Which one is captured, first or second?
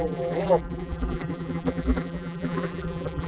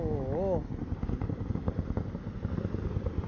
second